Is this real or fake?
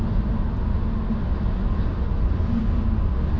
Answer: real